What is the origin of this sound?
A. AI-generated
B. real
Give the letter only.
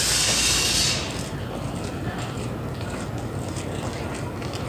B